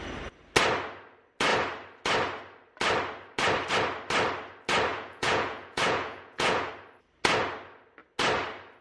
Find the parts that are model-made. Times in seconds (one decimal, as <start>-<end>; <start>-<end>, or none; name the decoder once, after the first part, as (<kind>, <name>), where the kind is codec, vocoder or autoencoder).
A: 4.9-6.7 (vocoder, Vocos)